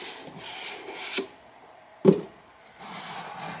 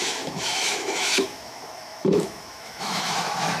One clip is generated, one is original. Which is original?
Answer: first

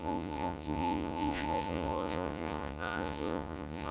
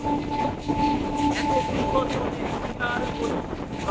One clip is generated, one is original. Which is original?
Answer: second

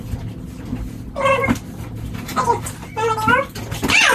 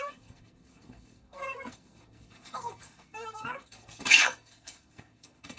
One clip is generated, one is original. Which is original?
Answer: first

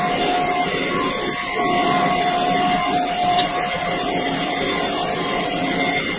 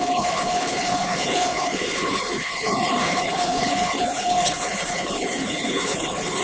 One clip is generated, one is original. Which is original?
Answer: first